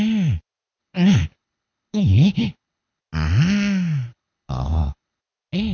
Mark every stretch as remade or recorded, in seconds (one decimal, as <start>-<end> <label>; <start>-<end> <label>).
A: 0.0-0.8 recorded; 0.8-3.0 remade; 3.0-4.1 recorded; 4.1-5.2 remade; 5.2-5.7 recorded